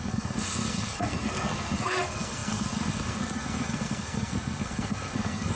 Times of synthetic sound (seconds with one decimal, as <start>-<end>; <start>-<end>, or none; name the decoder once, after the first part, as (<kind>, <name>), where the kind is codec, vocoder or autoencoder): 0.0-5.6 (codec, SNAC)